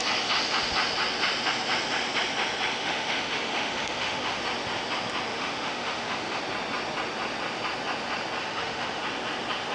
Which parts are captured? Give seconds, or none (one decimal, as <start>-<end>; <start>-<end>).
0.0-2.8; 4.4-5.3; 6.4-8.4; 9.0-9.7

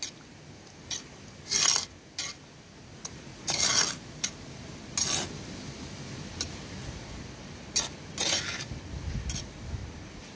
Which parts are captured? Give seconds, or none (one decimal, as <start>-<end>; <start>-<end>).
0.0-10.4

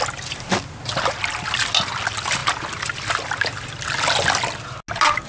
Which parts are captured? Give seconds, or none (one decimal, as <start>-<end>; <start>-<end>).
0.0-5.3